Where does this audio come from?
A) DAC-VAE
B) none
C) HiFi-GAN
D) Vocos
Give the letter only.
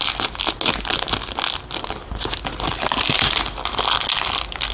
B